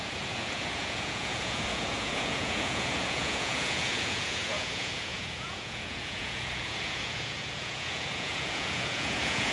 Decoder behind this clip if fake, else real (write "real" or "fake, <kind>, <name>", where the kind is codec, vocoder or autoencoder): fake, vocoder, Vocos